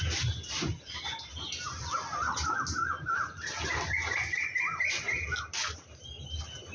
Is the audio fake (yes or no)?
no